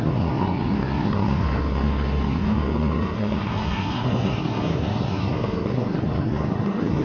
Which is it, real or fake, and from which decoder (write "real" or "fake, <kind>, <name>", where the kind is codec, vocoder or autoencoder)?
fake, codec, SNAC